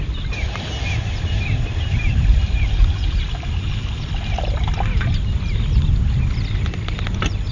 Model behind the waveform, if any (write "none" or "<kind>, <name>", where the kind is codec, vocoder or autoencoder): none